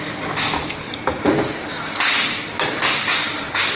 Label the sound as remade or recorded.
remade